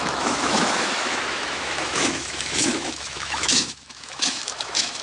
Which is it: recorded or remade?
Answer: remade